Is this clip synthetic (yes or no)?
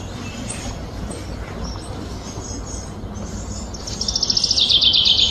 no